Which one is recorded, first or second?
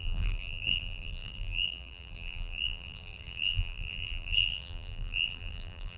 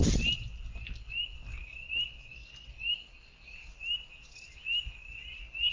second